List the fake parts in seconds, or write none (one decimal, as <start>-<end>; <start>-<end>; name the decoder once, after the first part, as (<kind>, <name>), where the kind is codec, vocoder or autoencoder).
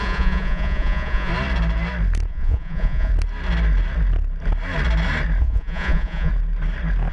0.0-1.3 (vocoder, Vocos); 2.3-3.1; 5.4-6.3